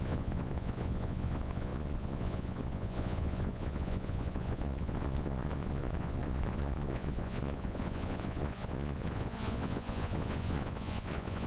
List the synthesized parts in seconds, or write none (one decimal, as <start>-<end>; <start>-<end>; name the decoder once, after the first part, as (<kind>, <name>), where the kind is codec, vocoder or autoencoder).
0.0-11.5 (vocoder, Vocos)